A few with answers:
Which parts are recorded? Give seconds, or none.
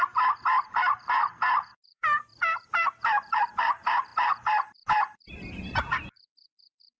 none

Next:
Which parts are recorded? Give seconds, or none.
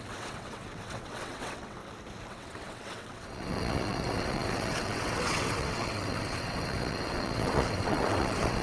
1.8-2.3